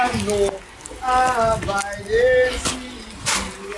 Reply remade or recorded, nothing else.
recorded